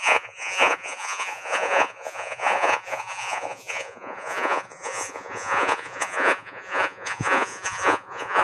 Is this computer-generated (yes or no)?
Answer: yes